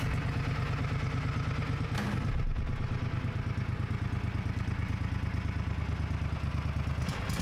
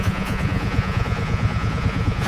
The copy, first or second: second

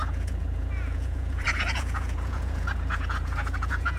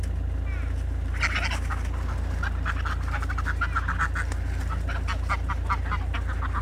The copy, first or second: first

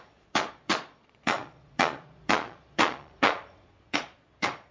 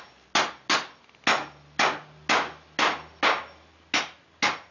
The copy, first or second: first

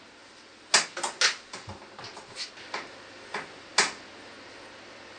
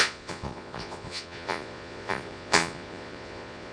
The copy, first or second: second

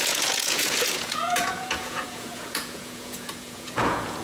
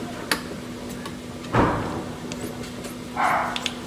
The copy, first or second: first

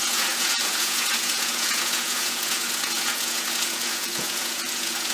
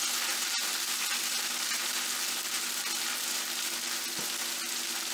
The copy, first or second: first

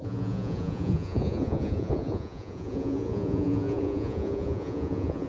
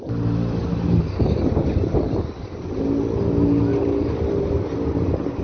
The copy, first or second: first